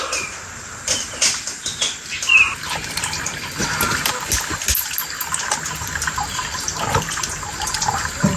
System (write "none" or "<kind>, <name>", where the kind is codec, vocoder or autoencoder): none